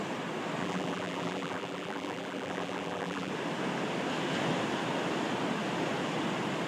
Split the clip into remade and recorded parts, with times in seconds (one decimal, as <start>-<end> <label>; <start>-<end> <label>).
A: 0.0-0.6 recorded; 0.6-3.3 remade; 3.3-6.7 recorded